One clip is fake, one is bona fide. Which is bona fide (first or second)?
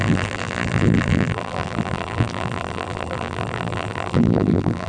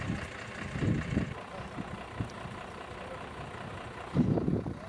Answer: second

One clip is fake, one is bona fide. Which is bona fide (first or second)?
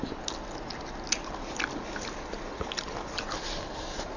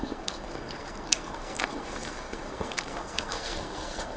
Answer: first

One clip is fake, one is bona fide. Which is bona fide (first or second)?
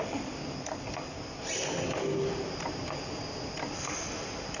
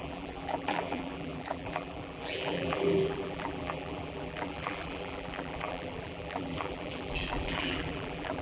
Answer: first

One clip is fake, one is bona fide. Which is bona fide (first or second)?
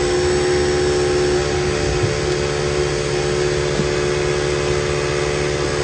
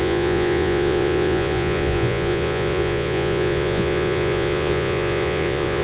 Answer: first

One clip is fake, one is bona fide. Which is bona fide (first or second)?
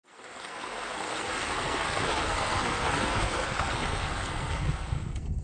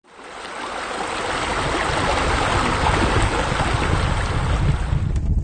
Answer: second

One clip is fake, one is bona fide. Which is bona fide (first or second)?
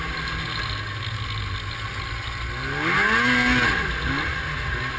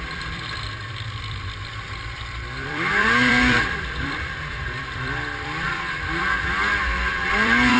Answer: first